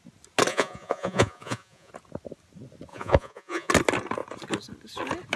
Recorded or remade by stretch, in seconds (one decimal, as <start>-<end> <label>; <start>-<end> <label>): 0.0-0.5 recorded; 0.5-1.9 remade; 1.9-2.9 recorded; 2.9-3.7 remade; 3.7-5.4 recorded